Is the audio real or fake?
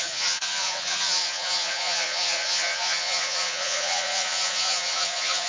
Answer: fake